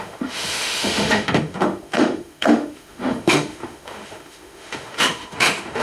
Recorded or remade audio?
remade